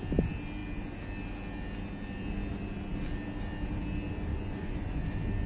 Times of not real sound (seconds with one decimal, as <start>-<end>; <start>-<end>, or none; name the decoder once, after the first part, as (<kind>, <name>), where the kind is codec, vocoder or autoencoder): 4.3-5.0 (vocoder, Vocos)